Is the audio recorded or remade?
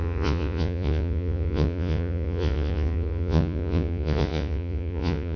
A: remade